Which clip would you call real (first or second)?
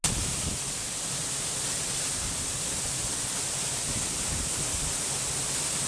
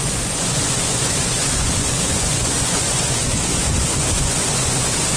first